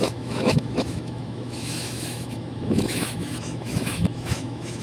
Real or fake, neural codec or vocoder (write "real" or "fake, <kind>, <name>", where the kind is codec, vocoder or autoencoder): fake, autoencoder, DAC-VAE